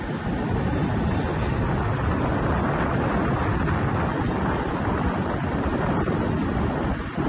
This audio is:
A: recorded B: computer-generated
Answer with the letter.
A